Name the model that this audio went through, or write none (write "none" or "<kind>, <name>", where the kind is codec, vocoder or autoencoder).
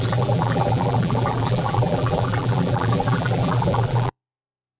vocoder, BigVGAN v2